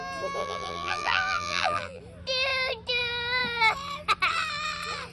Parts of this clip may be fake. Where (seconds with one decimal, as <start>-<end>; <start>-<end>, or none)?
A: 0.4-2.0